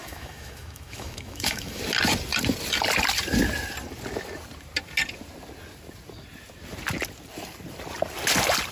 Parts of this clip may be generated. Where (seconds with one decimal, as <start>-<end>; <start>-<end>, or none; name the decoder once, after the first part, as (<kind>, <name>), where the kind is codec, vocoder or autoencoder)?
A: 0.0-1.8 (autoencoder, DAC-VAE)